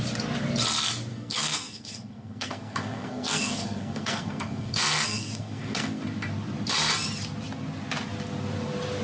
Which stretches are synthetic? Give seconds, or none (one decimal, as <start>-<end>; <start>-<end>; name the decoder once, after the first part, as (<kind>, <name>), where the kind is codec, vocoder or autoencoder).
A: 1.1-6.0 (codec, SNAC)